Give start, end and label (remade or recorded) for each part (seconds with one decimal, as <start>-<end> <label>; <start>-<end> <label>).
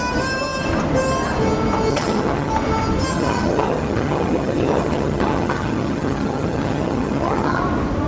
0.0-1.9 recorded; 1.9-2.5 remade; 2.5-3.1 recorded; 3.1-7.6 remade; 7.6-8.1 recorded